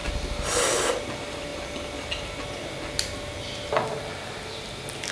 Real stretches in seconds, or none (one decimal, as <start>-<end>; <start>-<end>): 0.0-5.1